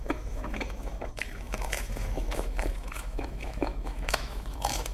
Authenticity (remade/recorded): remade